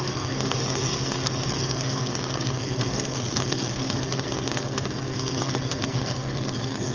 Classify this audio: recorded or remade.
remade